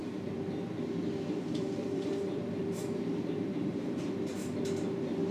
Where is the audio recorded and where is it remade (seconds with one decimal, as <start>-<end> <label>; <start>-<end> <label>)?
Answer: 0.0-1.6 recorded; 1.6-4.0 remade; 4.0-5.3 recorded